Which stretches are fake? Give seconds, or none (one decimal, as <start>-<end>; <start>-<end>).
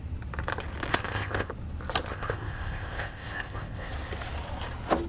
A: 0.9-1.5; 2.1-3.9